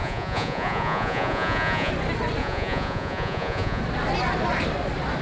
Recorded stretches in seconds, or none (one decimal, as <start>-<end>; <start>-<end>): 1.9-2.4; 3.8-5.2